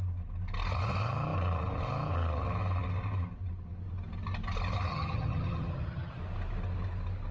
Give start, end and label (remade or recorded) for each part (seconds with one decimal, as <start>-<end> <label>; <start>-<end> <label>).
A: 0.0-4.9 recorded; 4.9-6.2 remade; 6.2-7.3 recorded